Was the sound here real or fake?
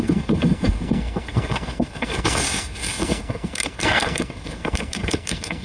fake